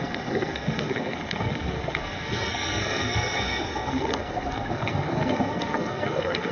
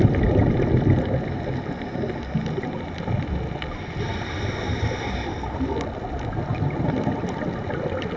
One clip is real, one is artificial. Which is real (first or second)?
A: second